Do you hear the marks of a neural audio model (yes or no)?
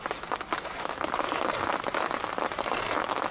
no